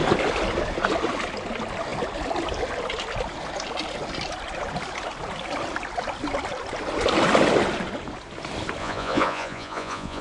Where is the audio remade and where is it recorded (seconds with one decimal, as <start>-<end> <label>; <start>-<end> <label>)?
0.0-8.8 recorded; 8.8-10.2 remade